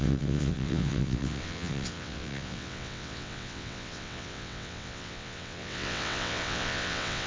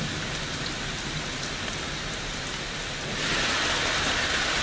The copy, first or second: first